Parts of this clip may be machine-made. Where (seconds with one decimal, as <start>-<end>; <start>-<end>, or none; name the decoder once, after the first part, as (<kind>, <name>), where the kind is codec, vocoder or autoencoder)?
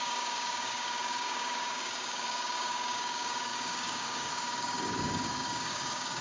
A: 0.0-6.2 (codec, DAC)